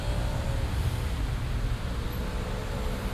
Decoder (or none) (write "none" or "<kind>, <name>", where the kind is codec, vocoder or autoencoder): none